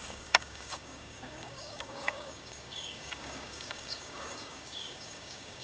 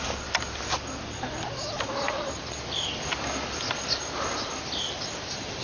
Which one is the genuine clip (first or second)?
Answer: second